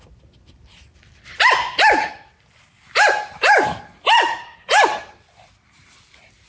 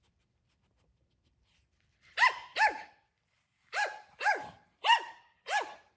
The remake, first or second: second